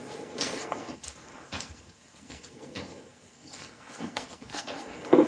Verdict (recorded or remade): remade